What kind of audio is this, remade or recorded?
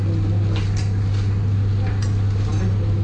recorded